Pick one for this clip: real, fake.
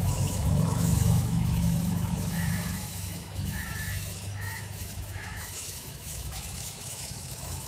fake